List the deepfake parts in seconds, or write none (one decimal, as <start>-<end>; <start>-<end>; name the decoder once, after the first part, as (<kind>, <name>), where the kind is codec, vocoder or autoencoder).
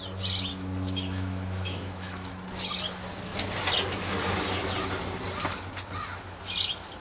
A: 0.5-2.3 (autoencoder, DAC-VAE)